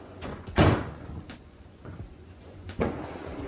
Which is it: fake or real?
fake